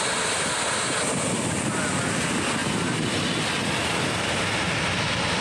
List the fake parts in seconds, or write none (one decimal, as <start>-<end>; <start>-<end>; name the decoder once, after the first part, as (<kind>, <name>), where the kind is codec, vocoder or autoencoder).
none